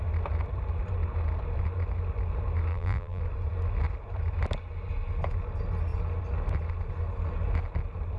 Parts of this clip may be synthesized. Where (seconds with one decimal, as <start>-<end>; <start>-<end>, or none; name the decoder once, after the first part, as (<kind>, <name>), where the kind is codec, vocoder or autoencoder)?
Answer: 2.7-3.2 (vocoder, BigVGAN v2)